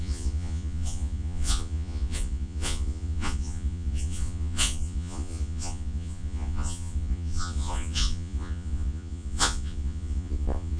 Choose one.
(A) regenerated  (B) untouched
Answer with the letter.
A